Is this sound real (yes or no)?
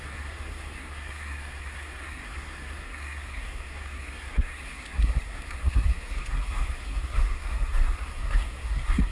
no